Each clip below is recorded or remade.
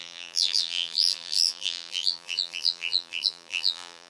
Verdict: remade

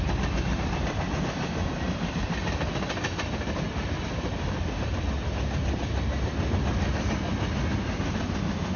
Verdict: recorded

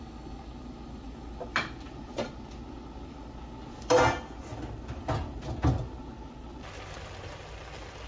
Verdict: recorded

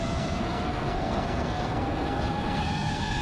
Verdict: remade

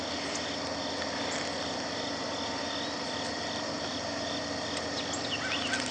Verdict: recorded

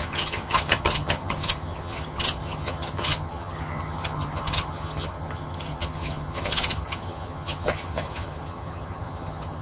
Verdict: remade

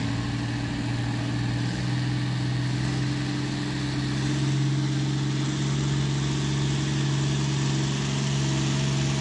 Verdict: recorded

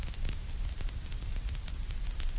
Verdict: recorded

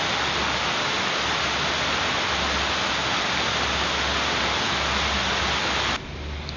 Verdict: recorded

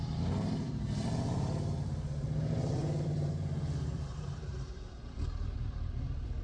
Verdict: remade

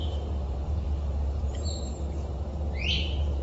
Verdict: remade